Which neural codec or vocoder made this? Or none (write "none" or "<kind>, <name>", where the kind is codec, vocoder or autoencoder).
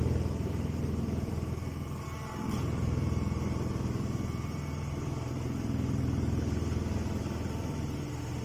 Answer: vocoder, BigVGAN v2